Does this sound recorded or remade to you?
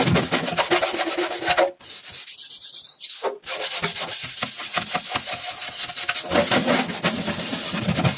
recorded